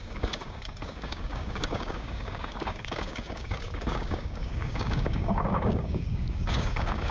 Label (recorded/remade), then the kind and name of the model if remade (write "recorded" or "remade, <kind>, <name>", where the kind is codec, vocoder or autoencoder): remade, codec, DAC